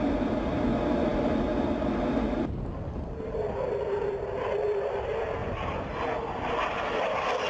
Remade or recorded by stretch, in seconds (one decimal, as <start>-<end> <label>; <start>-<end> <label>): 0.0-7.5 recorded